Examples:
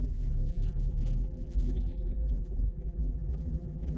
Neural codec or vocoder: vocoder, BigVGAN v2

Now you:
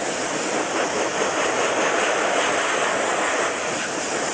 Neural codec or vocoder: none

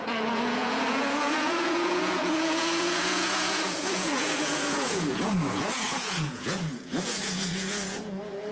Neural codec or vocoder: vocoder, Vocos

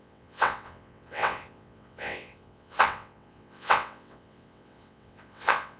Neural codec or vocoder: vocoder, WaveNeXt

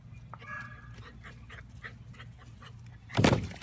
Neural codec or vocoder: none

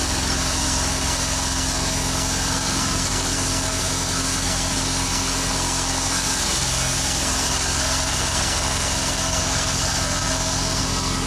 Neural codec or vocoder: codec, SNAC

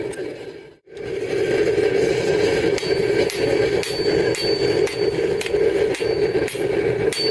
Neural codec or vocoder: none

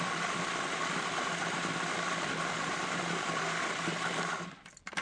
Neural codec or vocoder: none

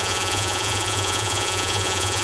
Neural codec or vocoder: vocoder, Vocos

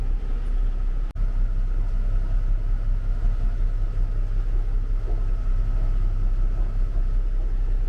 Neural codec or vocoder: none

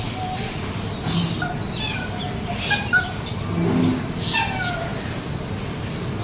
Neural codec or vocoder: none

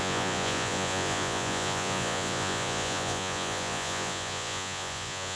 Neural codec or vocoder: vocoder, Vocos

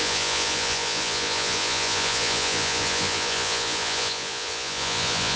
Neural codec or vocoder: vocoder, Vocos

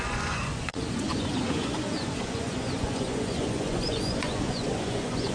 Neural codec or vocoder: vocoder, Vocos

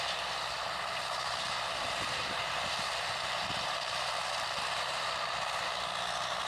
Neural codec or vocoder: vocoder, BigVGAN v2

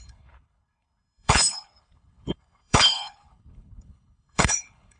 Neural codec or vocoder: codec, HILCodec